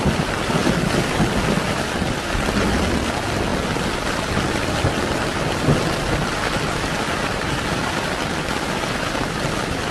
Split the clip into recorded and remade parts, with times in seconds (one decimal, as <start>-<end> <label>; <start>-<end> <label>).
0.0-9.9 recorded